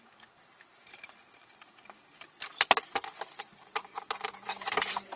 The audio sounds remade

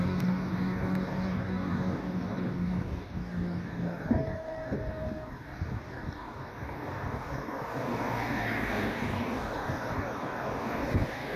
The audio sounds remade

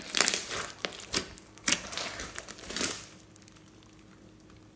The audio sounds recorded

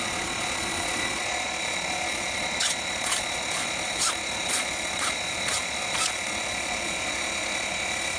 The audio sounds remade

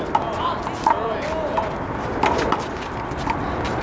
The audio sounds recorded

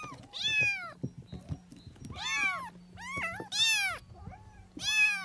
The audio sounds recorded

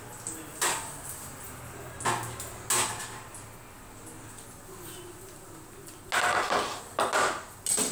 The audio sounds recorded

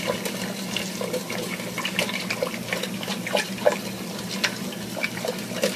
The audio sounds recorded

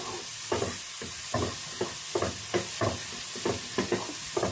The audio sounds recorded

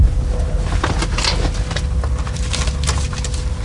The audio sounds recorded